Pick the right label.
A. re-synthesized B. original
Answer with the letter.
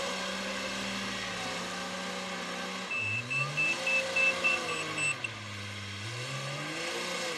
B